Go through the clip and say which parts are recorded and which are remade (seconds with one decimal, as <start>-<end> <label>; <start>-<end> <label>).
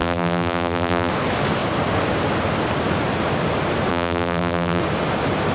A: 0.0-1.1 remade; 1.1-3.9 recorded; 3.9-4.8 remade; 4.8-5.5 recorded